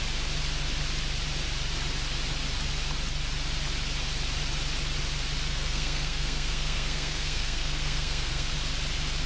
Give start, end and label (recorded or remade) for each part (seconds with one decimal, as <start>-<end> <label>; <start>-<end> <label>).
0.0-5.5 recorded; 5.5-8.5 remade; 8.5-9.3 recorded

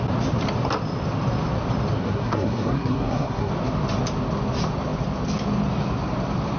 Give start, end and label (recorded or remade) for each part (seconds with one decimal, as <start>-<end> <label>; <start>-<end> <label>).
0.0-2.0 recorded; 2.0-3.5 remade; 3.5-6.6 recorded